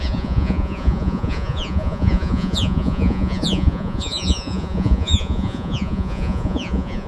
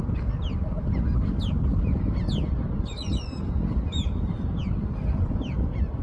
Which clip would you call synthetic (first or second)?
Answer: first